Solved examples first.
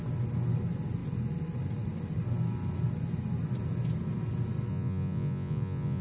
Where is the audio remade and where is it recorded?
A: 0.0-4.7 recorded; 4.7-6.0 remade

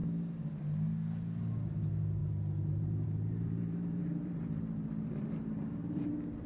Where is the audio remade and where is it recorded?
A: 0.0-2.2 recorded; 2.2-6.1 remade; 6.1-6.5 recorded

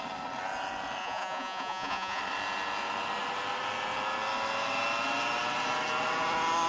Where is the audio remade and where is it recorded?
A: 0.0-1.0 recorded; 1.0-2.2 remade; 2.2-6.7 recorded

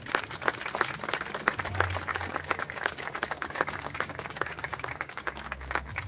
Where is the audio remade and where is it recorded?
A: 0.0-2.1 recorded; 2.1-6.1 remade

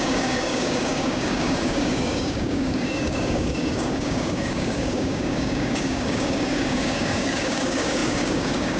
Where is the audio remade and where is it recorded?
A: 0.0-8.8 remade

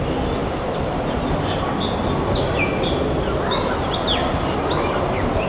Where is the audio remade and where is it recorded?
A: 0.0-5.5 recorded